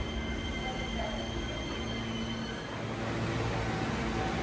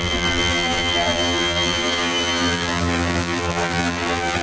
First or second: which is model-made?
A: second